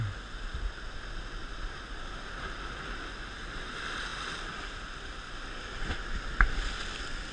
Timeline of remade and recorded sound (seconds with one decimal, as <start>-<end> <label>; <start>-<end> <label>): 0.0-7.3 recorded